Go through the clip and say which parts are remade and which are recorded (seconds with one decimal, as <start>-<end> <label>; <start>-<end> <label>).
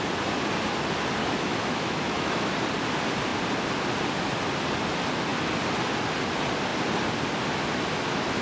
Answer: 0.0-1.2 recorded; 1.2-2.5 remade; 2.5-8.4 recorded